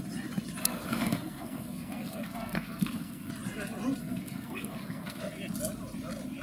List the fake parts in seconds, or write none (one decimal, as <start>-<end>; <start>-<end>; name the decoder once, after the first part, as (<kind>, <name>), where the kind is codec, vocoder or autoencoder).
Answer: 0.6-3.3 (codec, SNAC); 4.0-5.2